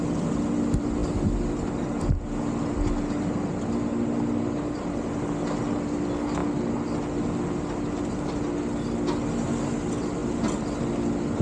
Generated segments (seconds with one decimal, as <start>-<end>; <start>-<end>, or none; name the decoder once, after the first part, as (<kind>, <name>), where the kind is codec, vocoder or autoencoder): none